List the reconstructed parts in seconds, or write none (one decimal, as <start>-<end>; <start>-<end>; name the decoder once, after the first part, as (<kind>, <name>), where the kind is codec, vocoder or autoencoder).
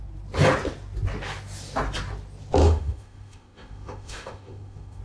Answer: 2.6-5.0 (autoencoder, DAC-VAE)